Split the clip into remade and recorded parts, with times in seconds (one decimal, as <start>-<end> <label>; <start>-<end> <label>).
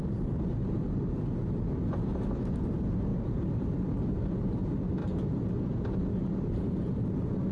0.0-2.1 recorded; 2.1-2.7 remade; 2.7-3.1 recorded; 3.1-3.8 remade; 3.8-7.5 recorded